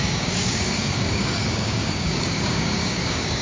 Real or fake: fake